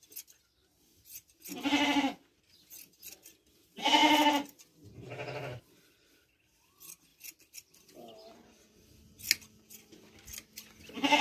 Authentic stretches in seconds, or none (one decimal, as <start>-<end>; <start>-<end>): 0.0-11.2